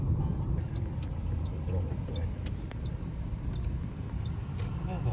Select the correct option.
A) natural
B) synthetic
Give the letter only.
B